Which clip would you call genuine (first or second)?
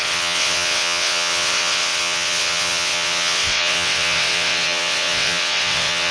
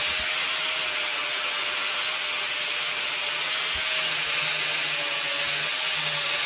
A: second